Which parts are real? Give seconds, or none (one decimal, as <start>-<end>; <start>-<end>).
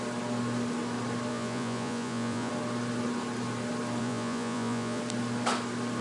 0.0-1.3; 2.5-4.0; 5.0-6.0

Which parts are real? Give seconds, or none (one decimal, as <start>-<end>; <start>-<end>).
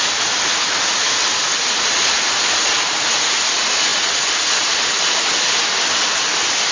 0.0-6.7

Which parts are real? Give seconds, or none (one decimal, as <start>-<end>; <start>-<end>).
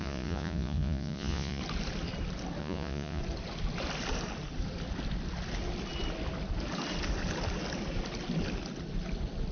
1.6-2.6; 3.2-9.5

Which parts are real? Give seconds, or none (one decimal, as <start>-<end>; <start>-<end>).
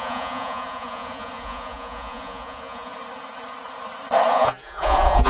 2.9-4.3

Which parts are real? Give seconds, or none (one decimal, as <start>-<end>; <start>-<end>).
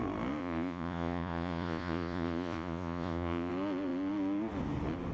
0.0-0.4; 3.5-5.1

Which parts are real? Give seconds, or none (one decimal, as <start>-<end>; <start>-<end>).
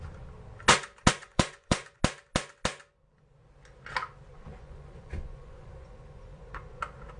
0.0-1.2; 2.0-4.3; 6.8-7.2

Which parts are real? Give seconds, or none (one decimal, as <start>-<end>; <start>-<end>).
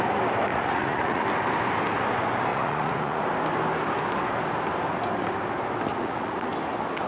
0.0-0.5; 1.2-2.5; 3.2-5.9; 6.5-7.1